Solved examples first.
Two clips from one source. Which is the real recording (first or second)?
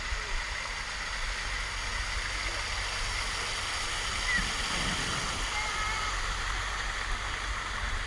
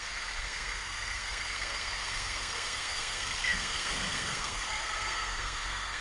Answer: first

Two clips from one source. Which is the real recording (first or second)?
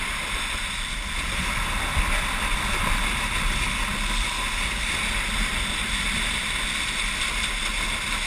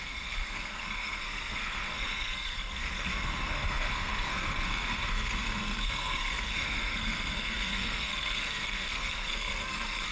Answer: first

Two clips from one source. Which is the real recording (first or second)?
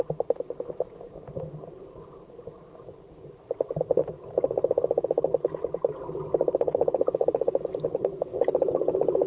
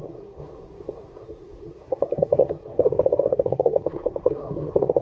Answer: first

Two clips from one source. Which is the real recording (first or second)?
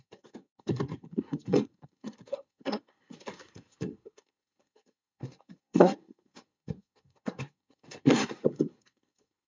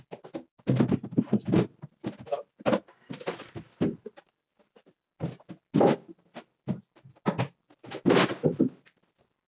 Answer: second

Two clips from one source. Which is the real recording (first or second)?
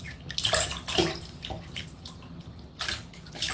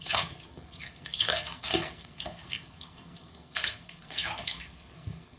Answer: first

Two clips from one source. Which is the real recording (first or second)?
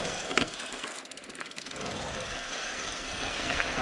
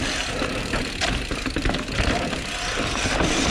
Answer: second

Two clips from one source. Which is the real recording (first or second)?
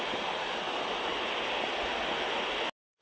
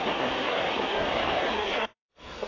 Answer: first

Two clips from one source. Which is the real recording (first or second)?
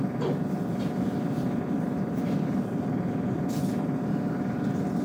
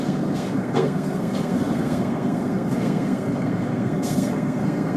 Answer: first